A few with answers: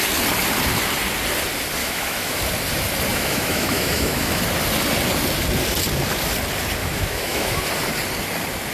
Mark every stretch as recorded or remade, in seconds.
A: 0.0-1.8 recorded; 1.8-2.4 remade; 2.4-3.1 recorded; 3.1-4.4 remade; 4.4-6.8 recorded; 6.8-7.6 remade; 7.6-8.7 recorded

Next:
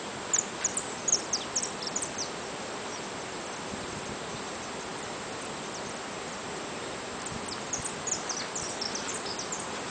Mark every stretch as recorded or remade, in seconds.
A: 0.0-9.9 recorded